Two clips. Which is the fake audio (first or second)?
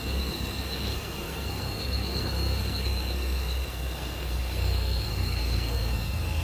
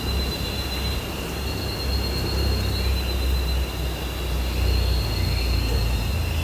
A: first